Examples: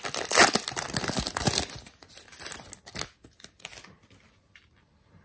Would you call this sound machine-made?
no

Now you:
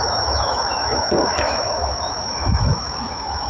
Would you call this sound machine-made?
yes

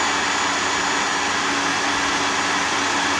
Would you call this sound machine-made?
no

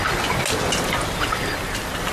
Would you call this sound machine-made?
no